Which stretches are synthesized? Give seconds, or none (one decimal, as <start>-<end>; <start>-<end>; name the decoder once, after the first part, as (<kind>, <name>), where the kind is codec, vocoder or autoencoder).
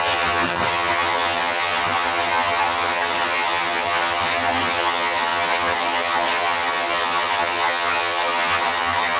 0.0-9.2 (vocoder, HiFi-GAN)